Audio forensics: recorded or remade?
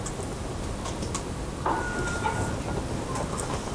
recorded